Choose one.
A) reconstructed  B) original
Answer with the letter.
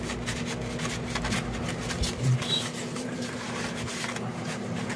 B